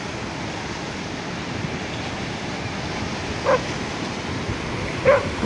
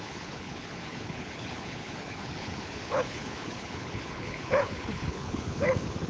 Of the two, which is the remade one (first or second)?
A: second